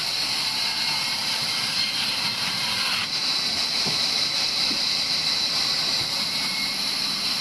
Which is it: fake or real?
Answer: fake